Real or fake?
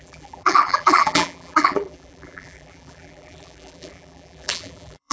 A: fake